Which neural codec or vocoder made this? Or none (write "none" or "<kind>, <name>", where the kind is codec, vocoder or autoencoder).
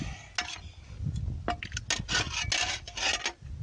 none